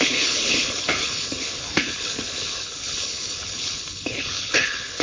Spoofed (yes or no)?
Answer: yes